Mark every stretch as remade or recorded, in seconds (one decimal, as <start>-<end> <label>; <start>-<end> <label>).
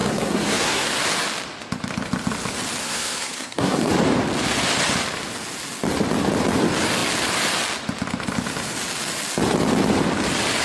0.0-0.9 remade; 0.9-2.8 recorded; 2.8-3.9 remade; 3.9-10.6 recorded